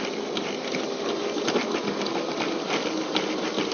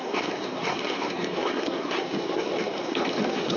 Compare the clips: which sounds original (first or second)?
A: first